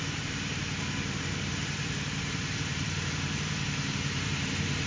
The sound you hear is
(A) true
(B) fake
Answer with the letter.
B